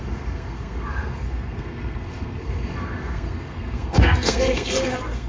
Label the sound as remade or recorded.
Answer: remade